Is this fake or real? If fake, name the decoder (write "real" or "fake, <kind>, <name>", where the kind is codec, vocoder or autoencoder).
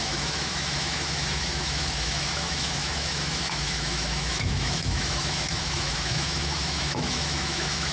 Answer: fake, autoencoder, DAC-VAE